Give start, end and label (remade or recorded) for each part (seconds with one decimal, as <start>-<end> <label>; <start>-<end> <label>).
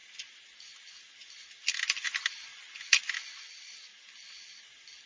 0.0-5.1 recorded